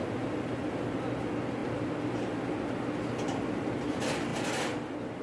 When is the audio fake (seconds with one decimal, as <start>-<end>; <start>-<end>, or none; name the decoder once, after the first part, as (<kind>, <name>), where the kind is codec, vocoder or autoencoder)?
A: none